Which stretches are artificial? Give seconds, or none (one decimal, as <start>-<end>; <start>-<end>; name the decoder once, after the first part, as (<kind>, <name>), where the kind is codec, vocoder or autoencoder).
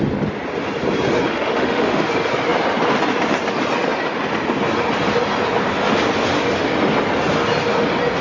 1.3-2.1 (autoencoder, DAC-VAE)